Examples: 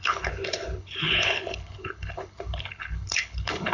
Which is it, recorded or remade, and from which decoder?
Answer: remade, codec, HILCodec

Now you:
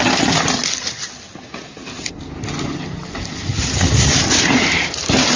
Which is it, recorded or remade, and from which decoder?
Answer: recorded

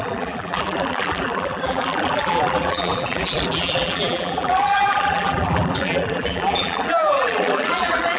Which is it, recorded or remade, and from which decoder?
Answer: remade, vocoder, BigVGAN v2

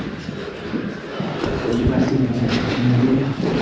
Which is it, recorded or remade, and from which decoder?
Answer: remade, vocoder, BigVGAN v2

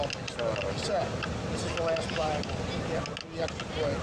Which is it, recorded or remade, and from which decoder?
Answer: recorded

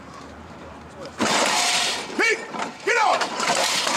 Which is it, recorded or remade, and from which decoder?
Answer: remade, vocoder, BigVGAN v2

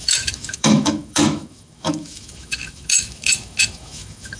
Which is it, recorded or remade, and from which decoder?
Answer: remade, autoencoder, DAC-VAE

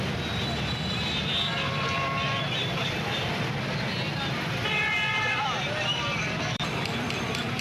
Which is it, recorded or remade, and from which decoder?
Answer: remade, vocoder, BigVGAN v2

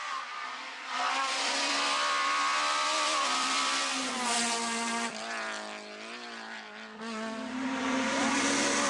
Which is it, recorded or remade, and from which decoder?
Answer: remade, vocoder, BigVGAN v2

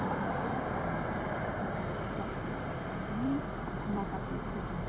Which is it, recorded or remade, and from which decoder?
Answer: remade, vocoder, BigVGAN v2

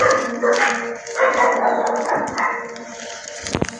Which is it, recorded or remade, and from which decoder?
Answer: remade, vocoder, BigVGAN v2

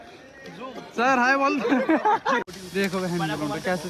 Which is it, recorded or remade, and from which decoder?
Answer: recorded